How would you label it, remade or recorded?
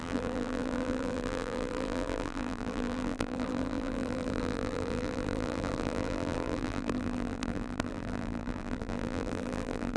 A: remade